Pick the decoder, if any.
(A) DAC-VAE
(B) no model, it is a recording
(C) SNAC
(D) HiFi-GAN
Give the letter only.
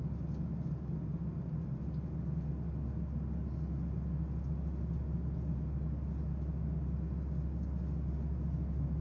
B